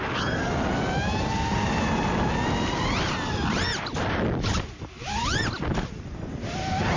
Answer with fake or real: real